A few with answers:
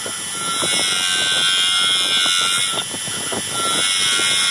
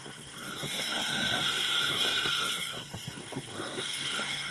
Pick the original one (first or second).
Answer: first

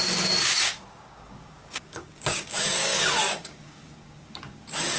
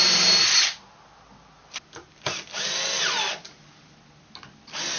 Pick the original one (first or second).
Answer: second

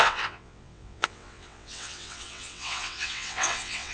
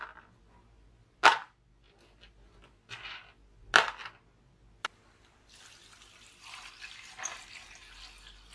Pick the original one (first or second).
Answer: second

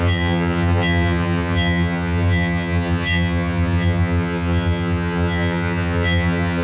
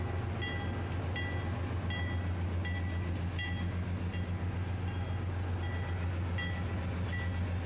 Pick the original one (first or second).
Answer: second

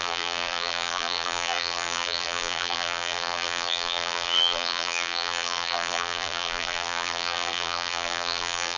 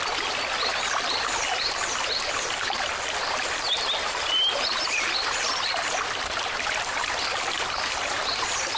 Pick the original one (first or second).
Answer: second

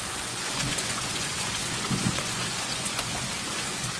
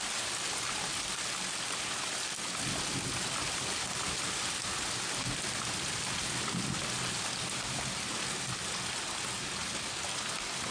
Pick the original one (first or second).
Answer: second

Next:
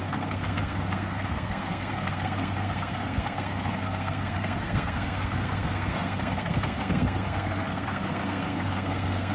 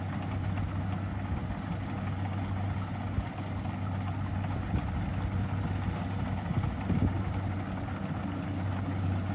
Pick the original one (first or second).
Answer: second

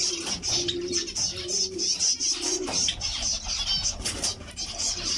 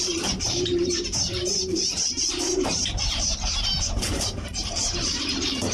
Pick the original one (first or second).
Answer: first